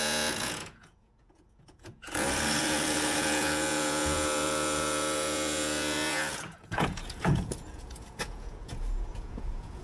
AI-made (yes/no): yes